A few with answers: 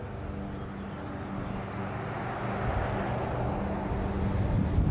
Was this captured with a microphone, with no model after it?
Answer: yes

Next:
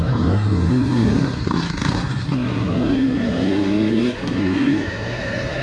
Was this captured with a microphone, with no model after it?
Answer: no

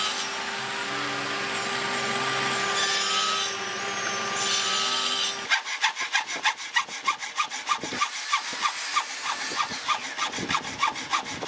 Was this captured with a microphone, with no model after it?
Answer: yes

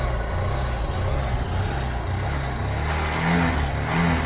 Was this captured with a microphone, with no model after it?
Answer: yes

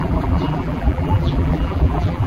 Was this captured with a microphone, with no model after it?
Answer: no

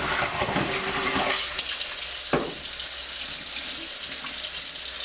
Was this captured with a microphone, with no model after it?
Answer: yes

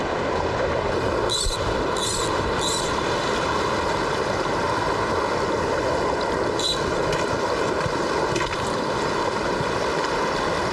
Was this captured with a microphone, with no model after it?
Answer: yes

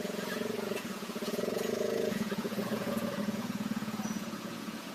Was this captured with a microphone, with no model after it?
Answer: no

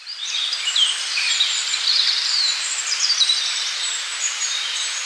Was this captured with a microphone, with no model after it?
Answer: no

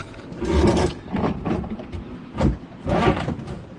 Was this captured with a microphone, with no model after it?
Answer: yes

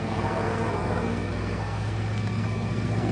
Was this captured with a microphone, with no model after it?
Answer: no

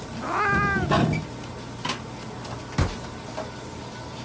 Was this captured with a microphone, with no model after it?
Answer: yes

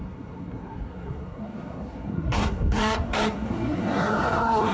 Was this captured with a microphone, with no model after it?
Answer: no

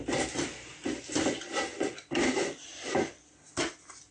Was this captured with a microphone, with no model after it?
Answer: yes